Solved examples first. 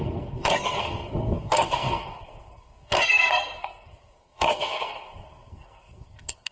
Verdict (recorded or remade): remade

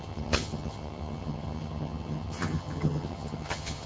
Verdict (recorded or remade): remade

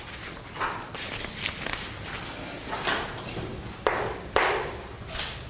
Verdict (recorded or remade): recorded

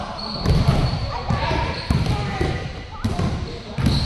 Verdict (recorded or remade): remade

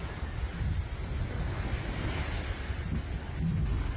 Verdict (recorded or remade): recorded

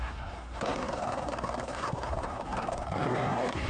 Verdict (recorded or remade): remade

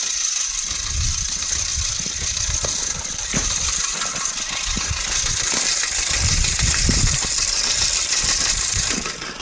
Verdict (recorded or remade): recorded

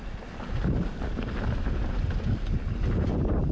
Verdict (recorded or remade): recorded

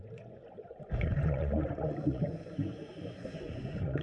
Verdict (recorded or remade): remade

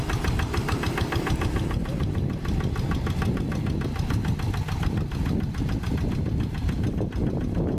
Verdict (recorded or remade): recorded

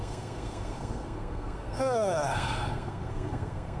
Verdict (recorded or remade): remade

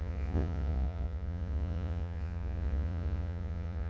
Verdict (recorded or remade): remade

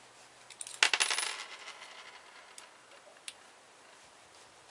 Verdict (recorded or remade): recorded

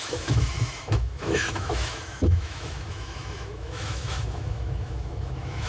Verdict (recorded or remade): remade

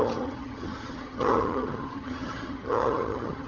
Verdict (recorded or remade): remade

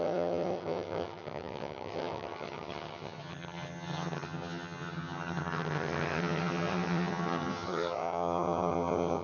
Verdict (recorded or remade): remade